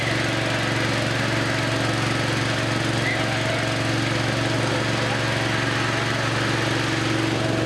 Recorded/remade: recorded